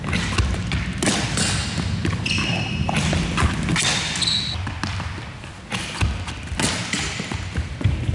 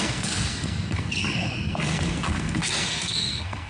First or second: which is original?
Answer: first